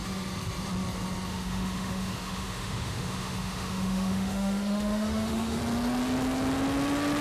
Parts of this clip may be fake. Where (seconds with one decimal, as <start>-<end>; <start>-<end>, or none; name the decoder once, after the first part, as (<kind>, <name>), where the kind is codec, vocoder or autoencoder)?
1.3-5.6 (autoencoder, DAC-VAE)